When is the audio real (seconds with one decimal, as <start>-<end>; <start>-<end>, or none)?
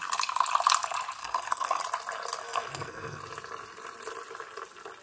0.0-1.2; 1.8-2.4; 3.2-5.0